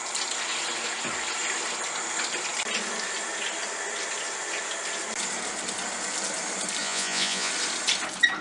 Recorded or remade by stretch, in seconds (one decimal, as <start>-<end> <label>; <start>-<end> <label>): 0.0-6.8 recorded; 6.8-7.5 remade; 7.5-8.4 recorded